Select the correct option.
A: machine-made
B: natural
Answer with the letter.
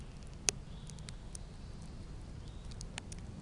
B